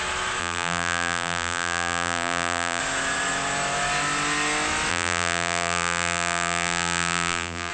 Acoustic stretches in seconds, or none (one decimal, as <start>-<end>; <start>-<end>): 0.0-0.4; 2.8-4.9